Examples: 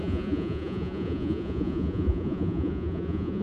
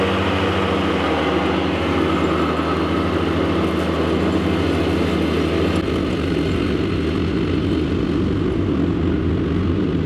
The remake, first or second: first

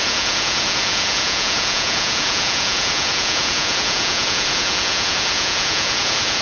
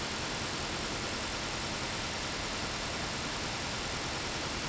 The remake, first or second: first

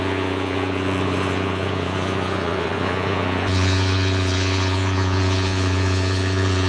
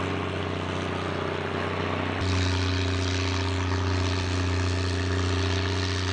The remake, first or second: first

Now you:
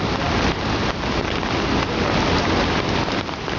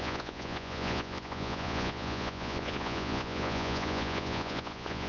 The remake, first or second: second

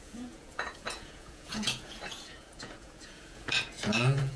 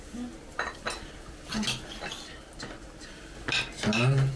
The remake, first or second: first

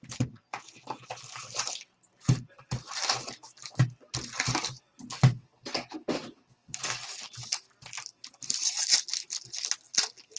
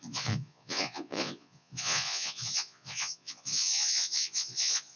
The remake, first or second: second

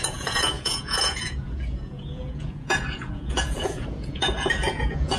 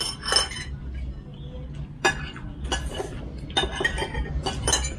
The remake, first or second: first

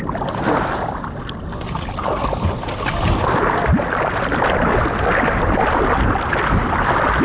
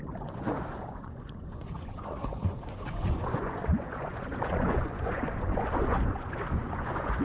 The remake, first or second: second